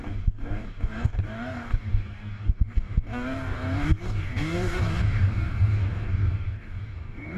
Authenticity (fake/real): fake